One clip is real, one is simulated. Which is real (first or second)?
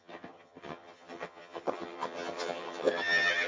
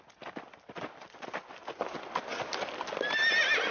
second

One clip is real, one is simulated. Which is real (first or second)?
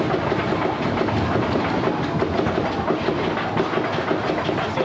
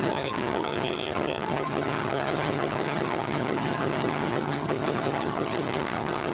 first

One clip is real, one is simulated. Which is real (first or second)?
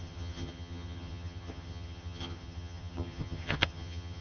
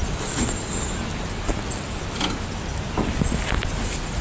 second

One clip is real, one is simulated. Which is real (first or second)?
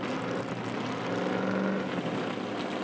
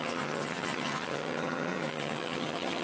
first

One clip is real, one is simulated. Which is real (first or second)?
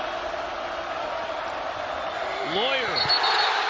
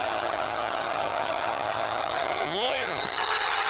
first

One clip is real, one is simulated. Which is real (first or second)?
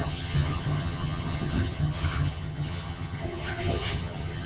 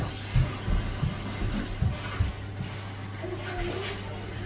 second